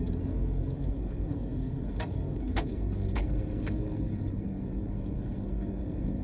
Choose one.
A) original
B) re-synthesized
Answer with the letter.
B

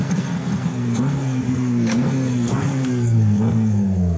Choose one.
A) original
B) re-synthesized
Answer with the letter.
B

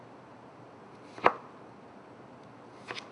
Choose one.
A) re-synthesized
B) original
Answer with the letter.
B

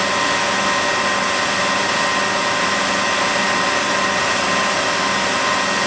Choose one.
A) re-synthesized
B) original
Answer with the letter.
B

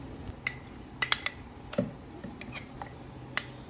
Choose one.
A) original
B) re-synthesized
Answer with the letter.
A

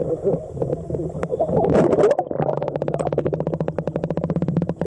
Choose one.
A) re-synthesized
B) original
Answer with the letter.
B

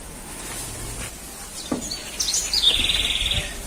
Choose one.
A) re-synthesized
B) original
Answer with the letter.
B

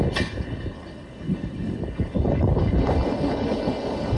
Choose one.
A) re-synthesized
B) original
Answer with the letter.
A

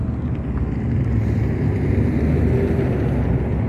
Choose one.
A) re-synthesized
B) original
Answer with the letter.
B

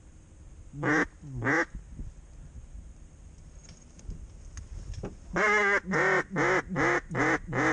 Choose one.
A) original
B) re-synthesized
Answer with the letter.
A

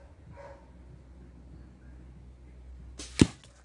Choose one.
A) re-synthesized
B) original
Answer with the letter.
B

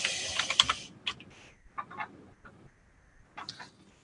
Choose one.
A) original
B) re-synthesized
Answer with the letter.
A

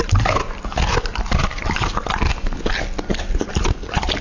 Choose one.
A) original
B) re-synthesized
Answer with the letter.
A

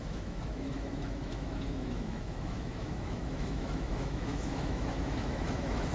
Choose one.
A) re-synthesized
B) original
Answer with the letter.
A